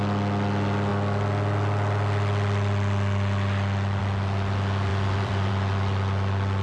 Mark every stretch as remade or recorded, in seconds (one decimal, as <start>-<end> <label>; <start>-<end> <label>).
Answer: 0.0-4.9 recorded; 4.9-5.5 remade; 5.5-6.6 recorded